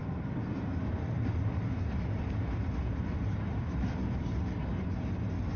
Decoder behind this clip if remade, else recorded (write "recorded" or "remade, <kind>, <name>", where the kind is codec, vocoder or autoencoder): recorded